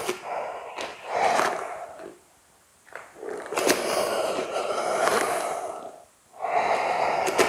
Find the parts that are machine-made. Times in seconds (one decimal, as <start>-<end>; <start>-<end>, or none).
0.9-1.4; 2.7-5.8